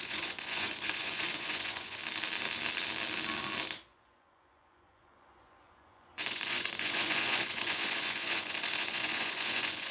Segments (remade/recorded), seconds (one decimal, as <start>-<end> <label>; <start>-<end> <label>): 0.0-2.0 remade; 2.0-3.9 recorded; 3.9-9.9 remade